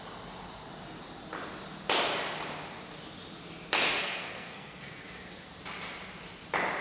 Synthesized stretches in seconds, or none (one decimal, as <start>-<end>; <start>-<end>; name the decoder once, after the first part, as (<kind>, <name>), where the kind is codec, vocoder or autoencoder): 4.0-5.5 (codec, SNAC)